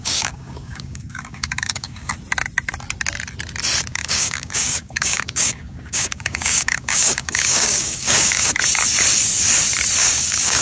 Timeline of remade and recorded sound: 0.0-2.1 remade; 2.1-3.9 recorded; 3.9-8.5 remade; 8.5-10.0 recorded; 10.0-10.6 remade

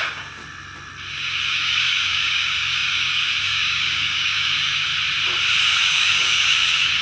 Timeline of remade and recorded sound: 0.0-0.4 remade; 0.4-1.1 recorded; 1.1-4.9 remade; 4.9-5.8 recorded; 5.8-7.0 remade

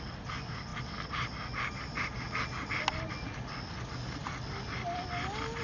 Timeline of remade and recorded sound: 0.0-5.6 recorded

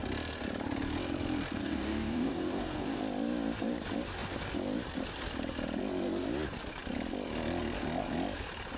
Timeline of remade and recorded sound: 0.0-1.6 recorded; 1.6-3.0 remade; 3.0-8.8 recorded

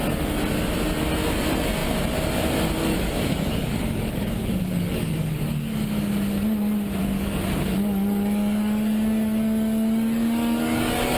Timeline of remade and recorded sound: 0.0-2.9 recorded; 2.9-6.1 remade; 6.1-7.0 recorded; 7.0-11.2 remade

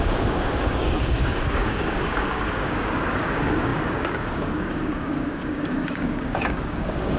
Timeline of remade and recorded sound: 0.0-7.2 remade